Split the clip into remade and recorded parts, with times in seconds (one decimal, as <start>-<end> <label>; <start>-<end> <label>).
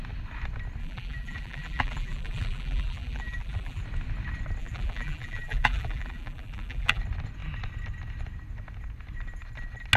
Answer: 0.0-0.8 recorded; 0.8-3.8 remade; 3.8-4.6 recorded; 4.6-7.0 remade; 7.0-10.0 recorded